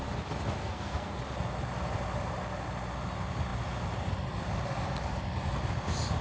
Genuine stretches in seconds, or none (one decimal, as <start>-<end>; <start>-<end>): 0.0-0.6; 1.2-6.2